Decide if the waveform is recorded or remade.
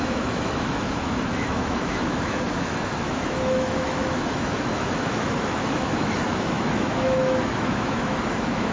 remade